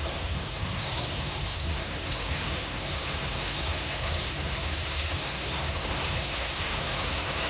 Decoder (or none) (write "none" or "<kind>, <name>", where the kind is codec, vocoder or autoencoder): codec, SNAC